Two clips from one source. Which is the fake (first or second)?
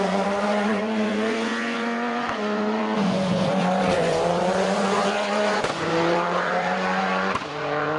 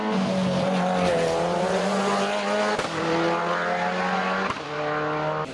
first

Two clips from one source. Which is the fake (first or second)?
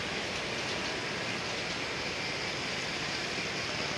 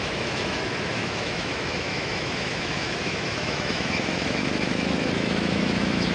second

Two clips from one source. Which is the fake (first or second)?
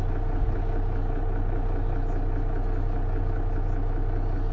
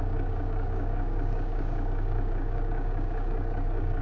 second